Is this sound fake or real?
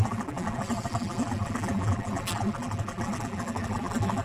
fake